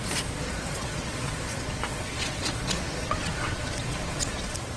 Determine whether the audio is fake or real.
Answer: fake